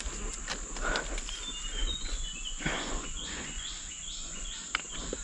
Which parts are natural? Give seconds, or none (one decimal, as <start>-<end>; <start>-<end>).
0.0-1.8; 4.4-5.2